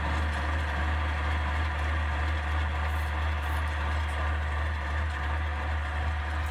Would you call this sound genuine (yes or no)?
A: yes